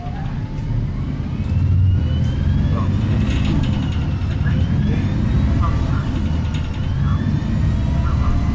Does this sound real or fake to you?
real